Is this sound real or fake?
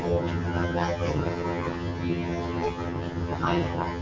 fake